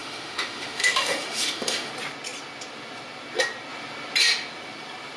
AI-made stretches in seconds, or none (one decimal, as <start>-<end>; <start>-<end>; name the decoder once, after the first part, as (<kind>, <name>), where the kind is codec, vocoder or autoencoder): 0.0-1.9 (autoencoder, DAC-VAE)